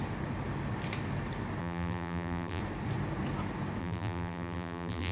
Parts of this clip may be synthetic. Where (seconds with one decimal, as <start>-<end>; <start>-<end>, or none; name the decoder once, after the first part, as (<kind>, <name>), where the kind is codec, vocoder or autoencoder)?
1.6-2.6 (vocoder, BigVGAN v2); 3.8-5.1